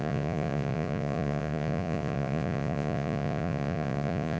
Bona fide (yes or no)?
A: no